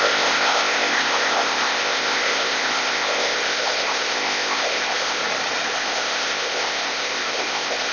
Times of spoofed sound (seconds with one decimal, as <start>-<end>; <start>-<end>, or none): 0.0-5.2; 5.7-7.9

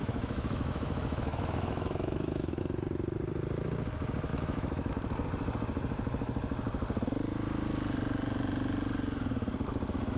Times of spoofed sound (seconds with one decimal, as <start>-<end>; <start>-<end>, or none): 0.0-2.6; 4.3-4.9

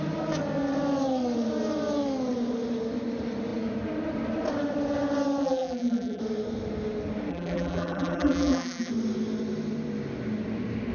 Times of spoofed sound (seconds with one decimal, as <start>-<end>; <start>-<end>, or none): 5.4-6.2; 7.3-8.9